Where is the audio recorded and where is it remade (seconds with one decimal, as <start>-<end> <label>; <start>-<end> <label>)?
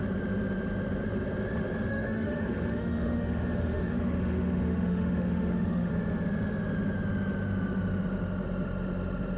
0.0-1.9 recorded; 1.9-5.9 remade; 5.9-9.4 recorded